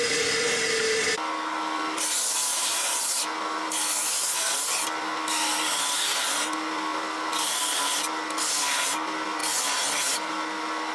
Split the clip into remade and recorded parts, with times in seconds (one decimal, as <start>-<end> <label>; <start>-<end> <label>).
0.0-2.5 recorded; 2.5-3.2 remade; 3.2-10.9 recorded